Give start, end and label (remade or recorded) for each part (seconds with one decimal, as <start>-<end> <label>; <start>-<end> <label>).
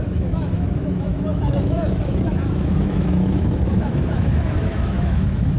0.0-5.6 remade